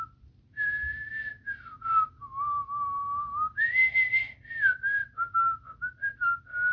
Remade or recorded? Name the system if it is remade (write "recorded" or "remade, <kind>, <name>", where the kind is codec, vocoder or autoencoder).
recorded